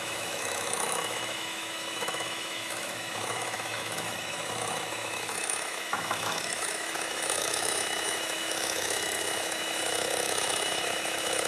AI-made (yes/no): yes